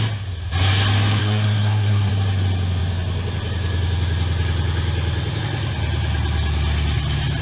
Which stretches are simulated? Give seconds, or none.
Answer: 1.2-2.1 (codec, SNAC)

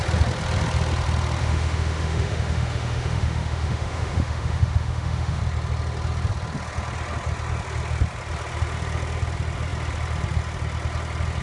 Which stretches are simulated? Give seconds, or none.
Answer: 1.4-5.4 (autoencoder, DAC-VAE)